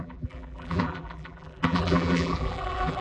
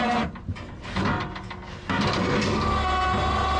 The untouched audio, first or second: second